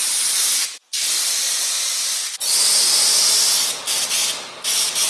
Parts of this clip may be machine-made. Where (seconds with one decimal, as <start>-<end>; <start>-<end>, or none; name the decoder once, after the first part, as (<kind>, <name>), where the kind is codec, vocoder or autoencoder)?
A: none